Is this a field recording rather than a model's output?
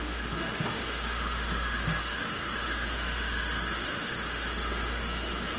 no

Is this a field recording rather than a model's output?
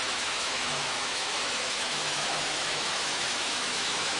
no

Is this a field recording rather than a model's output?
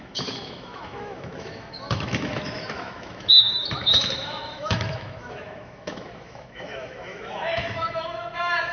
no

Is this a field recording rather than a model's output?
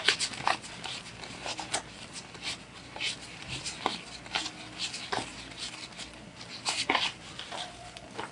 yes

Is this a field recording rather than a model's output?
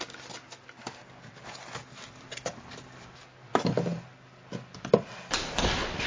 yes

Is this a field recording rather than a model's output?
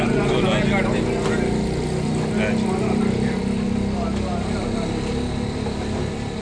yes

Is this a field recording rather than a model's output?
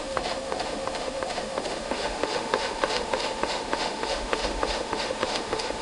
no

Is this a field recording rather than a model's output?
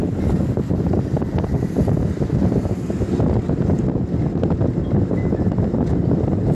yes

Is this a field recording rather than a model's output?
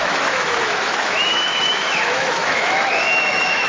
no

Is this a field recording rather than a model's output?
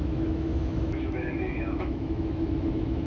no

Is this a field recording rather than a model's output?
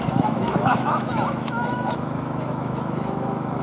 no